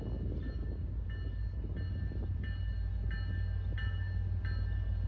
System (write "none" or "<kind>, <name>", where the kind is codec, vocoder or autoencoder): none